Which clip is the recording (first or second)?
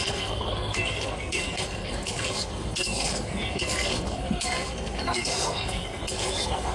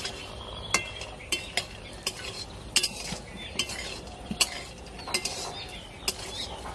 second